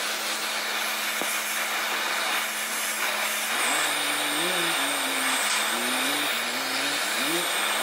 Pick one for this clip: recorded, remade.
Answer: recorded